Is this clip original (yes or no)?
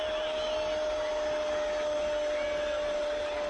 yes